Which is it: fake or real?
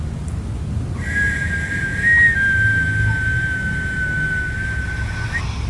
real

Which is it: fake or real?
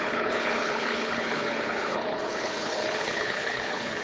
fake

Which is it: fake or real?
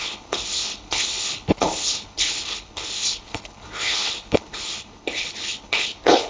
fake